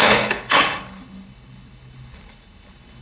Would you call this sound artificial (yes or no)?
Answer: yes